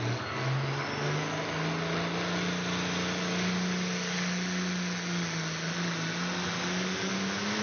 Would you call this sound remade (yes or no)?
no